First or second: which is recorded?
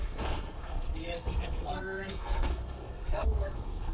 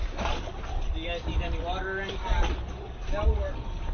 second